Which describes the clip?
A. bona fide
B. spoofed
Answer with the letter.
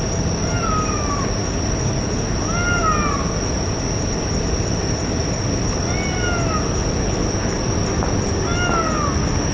A